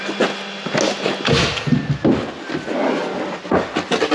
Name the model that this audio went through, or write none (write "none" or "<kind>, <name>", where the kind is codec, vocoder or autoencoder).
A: none